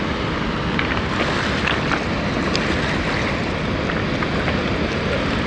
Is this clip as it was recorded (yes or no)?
yes